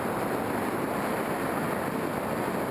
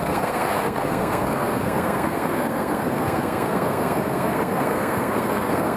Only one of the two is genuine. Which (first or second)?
first